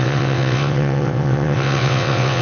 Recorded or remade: remade